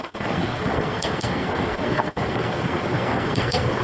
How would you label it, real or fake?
fake